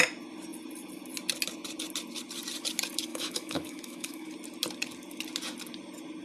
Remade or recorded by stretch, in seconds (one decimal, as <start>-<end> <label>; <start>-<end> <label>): 0.0-3.1 recorded; 3.1-4.3 remade; 4.3-6.2 recorded